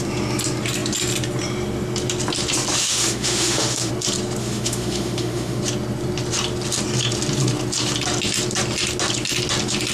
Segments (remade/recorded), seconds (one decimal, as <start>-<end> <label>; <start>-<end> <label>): 0.0-2.8 recorded; 2.8-3.9 remade; 3.9-4.4 recorded; 4.4-5.6 remade; 5.6-9.9 recorded